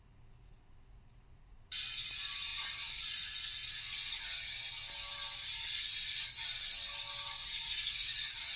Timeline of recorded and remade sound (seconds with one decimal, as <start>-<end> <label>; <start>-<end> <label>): 0.0-8.6 recorded